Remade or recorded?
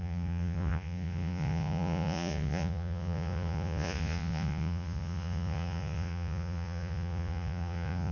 remade